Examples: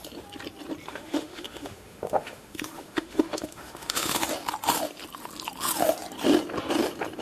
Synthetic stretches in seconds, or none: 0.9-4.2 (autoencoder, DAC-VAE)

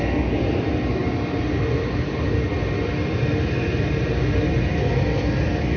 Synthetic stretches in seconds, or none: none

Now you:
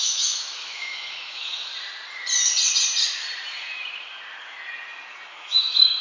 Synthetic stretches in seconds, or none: 0.0-1.7 (autoencoder, DAC-VAE); 5.3-6.0

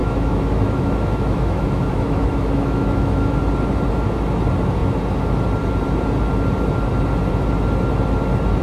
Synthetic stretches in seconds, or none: 0.0-3.4 (autoencoder, DAC-VAE)